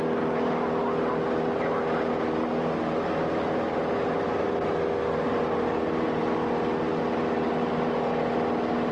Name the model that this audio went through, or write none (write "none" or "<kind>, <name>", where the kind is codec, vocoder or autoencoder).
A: none